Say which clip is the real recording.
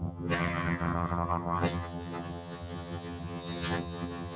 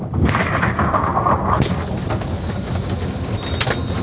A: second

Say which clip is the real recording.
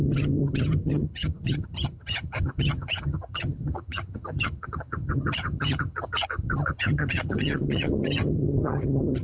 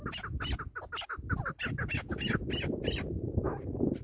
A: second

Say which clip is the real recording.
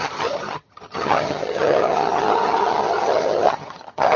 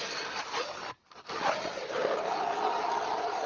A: second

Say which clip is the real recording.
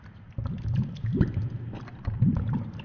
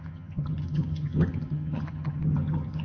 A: first